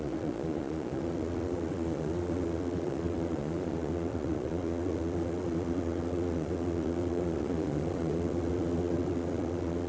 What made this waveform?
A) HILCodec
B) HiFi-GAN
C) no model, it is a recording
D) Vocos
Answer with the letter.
D